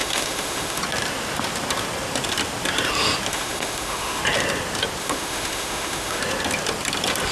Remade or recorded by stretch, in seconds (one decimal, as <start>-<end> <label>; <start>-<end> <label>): 0.0-0.8 remade; 0.8-3.3 recorded; 3.3-4.2 remade; 4.2-5.0 recorded; 5.0-6.2 remade; 6.2-7.3 recorded